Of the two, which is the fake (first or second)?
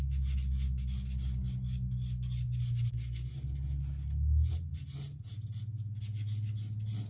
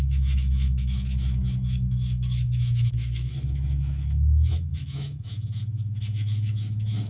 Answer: second